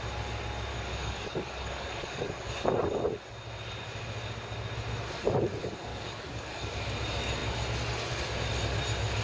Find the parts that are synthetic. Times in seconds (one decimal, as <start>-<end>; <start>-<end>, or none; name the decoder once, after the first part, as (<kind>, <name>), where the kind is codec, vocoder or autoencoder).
0.7-2.5 (codec, DAC); 5.9-6.7